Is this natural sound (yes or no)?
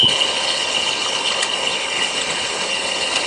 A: no